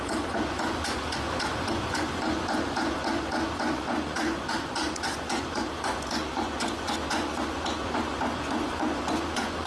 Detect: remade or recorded remade